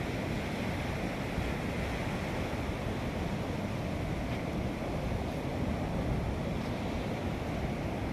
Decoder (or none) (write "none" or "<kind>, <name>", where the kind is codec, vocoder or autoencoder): none